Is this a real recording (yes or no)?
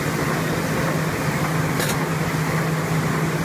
yes